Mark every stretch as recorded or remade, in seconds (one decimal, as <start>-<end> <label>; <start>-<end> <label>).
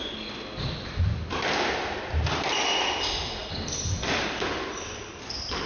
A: 0.0-5.7 recorded